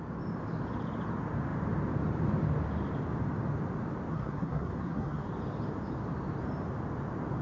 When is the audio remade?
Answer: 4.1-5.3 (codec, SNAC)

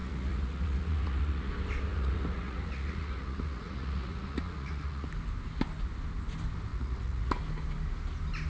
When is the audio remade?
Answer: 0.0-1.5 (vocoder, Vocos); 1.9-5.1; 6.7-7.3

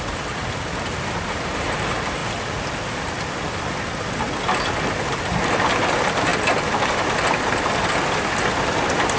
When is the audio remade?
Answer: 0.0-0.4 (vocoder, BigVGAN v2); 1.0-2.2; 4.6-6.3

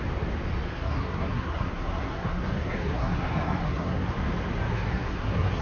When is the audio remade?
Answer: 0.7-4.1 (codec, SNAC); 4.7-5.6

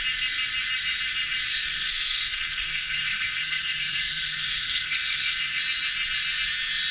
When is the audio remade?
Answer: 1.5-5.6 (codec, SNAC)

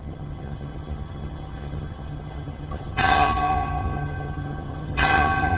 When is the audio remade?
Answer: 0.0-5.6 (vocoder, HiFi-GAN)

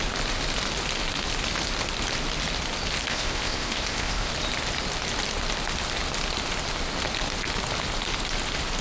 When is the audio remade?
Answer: 3.1-4.3 (codec, ZipCodec)